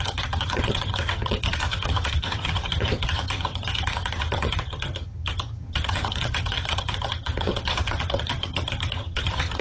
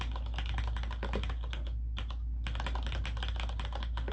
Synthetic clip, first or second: first